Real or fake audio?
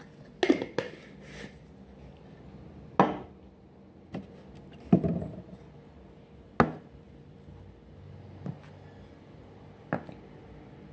real